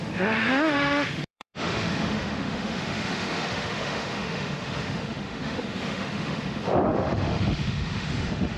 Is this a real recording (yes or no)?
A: no